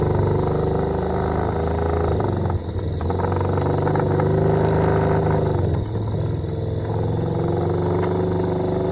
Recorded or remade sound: recorded